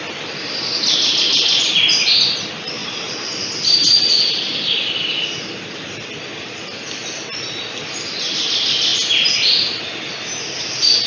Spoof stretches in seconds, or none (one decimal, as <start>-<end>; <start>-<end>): none

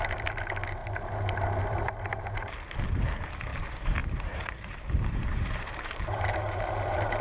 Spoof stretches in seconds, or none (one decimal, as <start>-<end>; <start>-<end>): 3.5-7.2

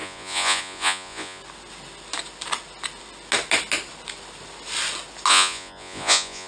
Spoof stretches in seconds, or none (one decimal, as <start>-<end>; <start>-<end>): 0.0-1.4; 5.3-6.5